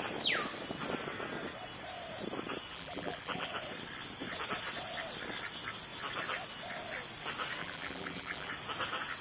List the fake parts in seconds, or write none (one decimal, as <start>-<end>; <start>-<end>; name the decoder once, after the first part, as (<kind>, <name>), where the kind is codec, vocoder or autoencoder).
2.7-3.5 (vocoder, BigVGAN v2); 7.6-8.5